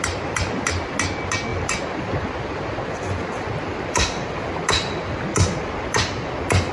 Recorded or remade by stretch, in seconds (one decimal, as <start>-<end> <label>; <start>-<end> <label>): 0.0-6.7 recorded